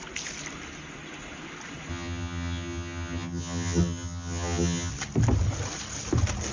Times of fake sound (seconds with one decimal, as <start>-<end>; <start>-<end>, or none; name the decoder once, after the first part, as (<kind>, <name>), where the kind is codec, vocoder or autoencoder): 1.9-4.9 (vocoder, HiFi-GAN)